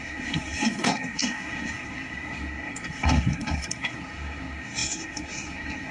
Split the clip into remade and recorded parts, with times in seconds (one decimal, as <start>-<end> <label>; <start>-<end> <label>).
0.0-5.9 remade